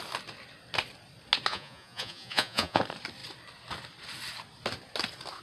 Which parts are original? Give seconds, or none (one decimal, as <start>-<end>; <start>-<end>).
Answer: 0.0-1.5; 2.8-5.4